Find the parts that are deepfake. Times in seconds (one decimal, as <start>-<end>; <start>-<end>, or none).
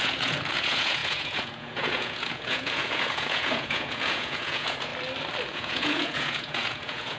0.0-4.9; 5.5-7.2